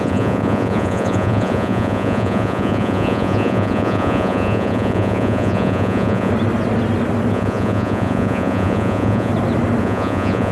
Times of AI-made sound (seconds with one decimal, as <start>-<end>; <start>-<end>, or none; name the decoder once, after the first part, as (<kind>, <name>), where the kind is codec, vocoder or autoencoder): 0.0-6.3 (vocoder, Vocos); 7.3-9.3; 9.8-10.5